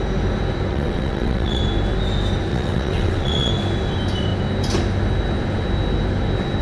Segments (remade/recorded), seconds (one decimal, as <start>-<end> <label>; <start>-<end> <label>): 0.0-0.7 recorded; 0.7-1.6 remade; 1.6-2.5 recorded; 2.5-3.5 remade; 3.5-6.6 recorded